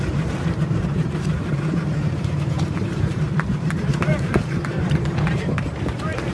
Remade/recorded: remade